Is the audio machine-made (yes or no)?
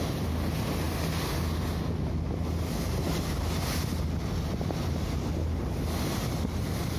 no